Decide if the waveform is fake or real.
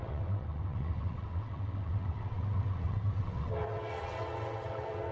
fake